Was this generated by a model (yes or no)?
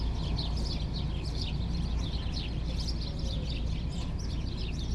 no